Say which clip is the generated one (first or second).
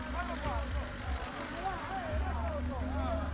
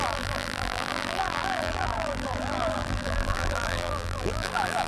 second